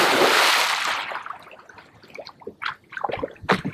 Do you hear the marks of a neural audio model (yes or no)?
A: no